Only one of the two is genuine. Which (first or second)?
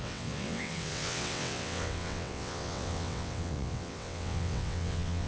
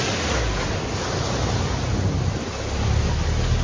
second